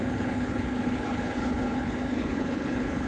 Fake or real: fake